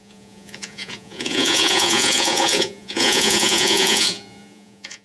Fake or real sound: fake